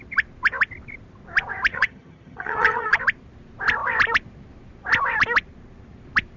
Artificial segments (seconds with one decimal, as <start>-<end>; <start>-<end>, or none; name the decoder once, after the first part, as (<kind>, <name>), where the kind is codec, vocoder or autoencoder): 1.7-3.0 (vocoder, HiFi-GAN)